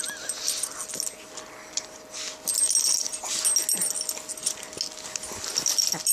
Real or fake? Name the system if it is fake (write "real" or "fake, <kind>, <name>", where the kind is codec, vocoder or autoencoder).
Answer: real